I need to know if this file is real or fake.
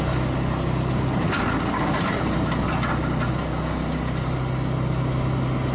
real